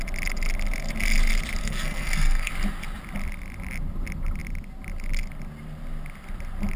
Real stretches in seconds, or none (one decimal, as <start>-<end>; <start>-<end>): 0.0-1.6; 2.5-6.8